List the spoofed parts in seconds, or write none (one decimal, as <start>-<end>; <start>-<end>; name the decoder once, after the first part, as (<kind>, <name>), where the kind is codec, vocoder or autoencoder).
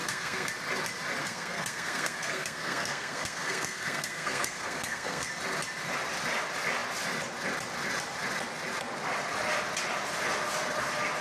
0.0-0.5 (codec, SNAC); 1.2-5.3